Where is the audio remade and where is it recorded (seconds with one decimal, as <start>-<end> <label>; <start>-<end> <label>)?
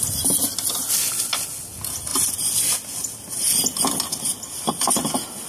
0.0-5.5 recorded